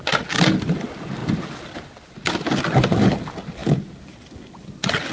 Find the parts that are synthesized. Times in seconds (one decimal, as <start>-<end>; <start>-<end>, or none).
none